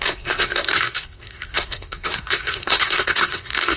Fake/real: fake